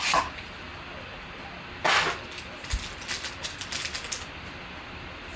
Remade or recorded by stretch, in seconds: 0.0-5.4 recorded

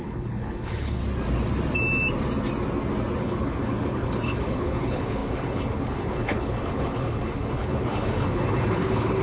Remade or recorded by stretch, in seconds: 0.0-1.0 remade; 1.0-3.2 recorded; 3.2-9.2 remade

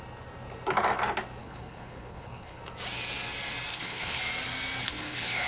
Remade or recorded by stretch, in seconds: 0.0-1.4 recorded; 1.4-2.6 remade; 2.6-3.7 recorded; 3.7-4.2 remade; 4.2-4.8 recorded; 4.8-5.5 remade

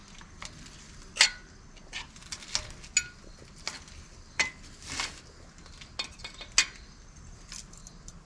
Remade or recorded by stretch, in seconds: 0.0-8.3 recorded

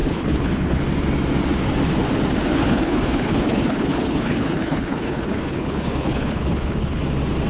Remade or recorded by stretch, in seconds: 0.0-0.8 remade; 0.8-2.5 recorded; 2.5-7.0 remade; 7.0-7.5 recorded